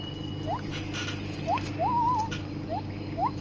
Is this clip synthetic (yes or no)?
no